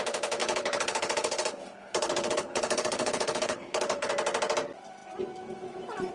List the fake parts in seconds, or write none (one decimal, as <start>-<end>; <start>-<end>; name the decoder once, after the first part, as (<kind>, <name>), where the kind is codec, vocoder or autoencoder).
0.4-4.1 (codec, HILCodec)